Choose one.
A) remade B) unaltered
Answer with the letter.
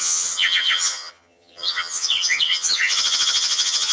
A